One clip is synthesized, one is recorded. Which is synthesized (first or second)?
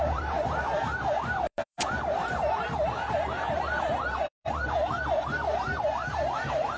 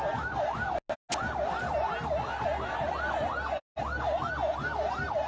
first